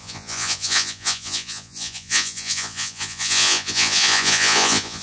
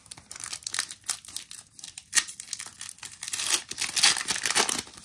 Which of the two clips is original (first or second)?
second